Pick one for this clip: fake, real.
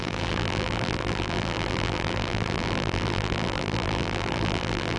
fake